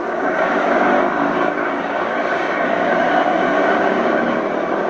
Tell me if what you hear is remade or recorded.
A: remade